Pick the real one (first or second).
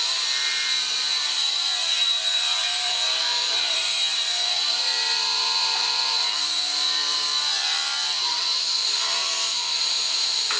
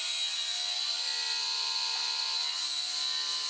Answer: second